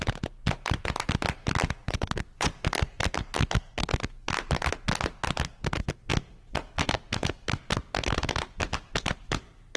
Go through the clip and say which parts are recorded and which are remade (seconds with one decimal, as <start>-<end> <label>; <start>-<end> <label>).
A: 0.0-1.8 recorded; 1.8-2.5 remade; 2.5-9.8 recorded